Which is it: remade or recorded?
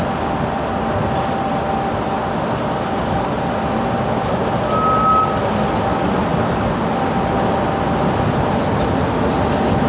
recorded